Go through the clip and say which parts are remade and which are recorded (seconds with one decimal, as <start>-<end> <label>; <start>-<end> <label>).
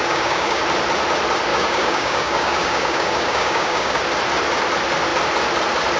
0.0-0.6 remade; 0.6-1.5 recorded; 1.5-4.0 remade; 4.0-6.0 recorded